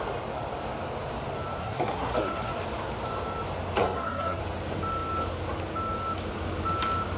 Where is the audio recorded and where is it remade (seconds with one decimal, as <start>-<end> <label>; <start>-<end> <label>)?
0.0-1.6 recorded; 1.6-2.5 remade; 2.5-3.8 recorded; 3.8-4.4 remade; 4.4-7.2 recorded

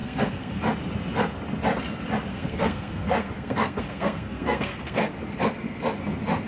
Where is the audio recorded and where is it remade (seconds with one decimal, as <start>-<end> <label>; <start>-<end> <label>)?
0.0-0.6 remade; 0.6-2.3 recorded; 2.3-5.1 remade; 5.1-6.5 recorded

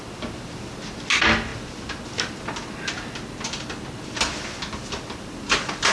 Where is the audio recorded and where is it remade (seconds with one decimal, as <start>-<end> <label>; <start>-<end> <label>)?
0.0-5.9 recorded